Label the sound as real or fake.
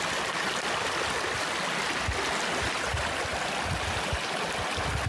real